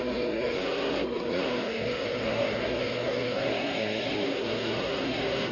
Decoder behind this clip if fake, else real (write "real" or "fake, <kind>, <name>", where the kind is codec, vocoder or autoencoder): fake, codec, SNAC